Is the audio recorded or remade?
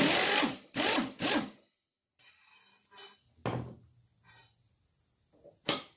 recorded